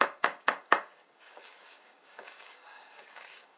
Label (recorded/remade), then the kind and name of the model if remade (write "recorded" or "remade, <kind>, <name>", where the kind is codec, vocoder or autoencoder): remade, codec, DAC